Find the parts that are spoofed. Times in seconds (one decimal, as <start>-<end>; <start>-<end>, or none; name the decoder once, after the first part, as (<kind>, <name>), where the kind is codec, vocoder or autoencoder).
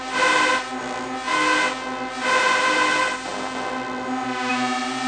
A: none